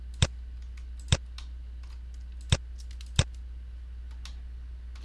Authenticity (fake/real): real